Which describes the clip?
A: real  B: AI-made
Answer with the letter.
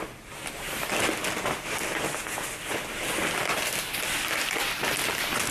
A